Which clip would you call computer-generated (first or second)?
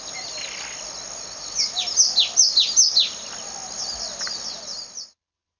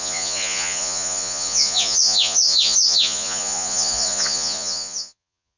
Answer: second